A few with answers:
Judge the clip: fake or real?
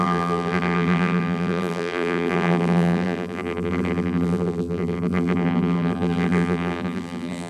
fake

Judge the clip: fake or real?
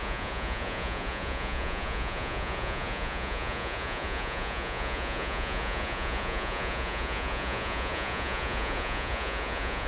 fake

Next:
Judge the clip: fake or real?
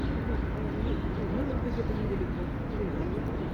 fake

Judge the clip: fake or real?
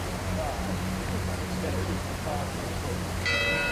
real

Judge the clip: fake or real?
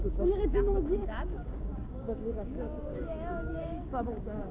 fake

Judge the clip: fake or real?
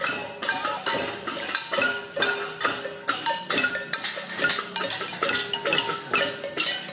real